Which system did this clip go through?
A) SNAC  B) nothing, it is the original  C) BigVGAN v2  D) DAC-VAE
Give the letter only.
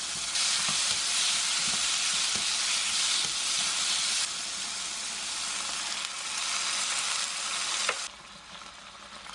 B